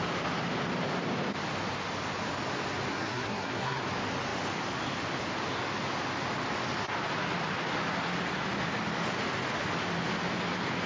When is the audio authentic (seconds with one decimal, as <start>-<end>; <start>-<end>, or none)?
0.0-2.9; 3.8-10.9